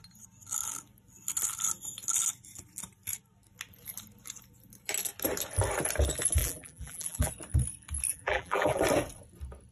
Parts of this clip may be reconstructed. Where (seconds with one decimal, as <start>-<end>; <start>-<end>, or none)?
6.4-7.3; 8.1-8.8